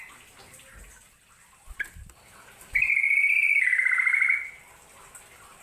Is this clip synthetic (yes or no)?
no